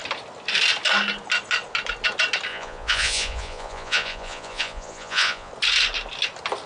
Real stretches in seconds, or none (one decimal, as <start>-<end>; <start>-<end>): 0.0-2.5; 5.5-6.7